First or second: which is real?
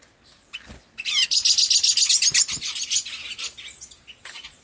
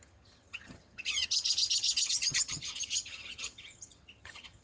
first